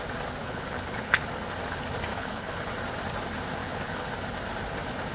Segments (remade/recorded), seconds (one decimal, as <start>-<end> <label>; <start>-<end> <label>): 0.0-0.4 recorded; 0.4-1.2 remade; 1.2-2.1 recorded; 2.1-2.7 remade; 2.7-3.6 recorded; 3.6-4.1 remade; 4.1-5.1 recorded